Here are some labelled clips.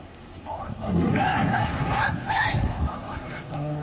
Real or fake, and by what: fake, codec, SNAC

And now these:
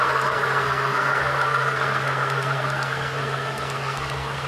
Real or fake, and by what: fake, codec, SNAC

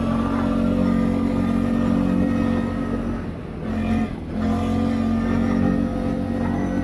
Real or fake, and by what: real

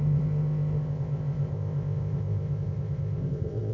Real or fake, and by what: fake, codec, ZipCodec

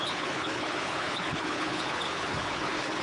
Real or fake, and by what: fake, codec, HILCodec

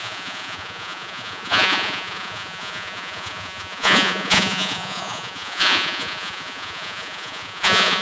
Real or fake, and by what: fake, vocoder, Vocos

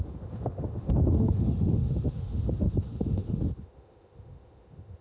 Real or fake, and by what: fake, autoencoder, DAC-VAE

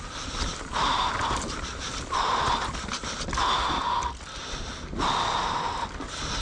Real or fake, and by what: real